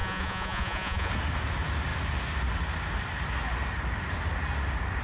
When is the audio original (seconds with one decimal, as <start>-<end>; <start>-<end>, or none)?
1.1-5.0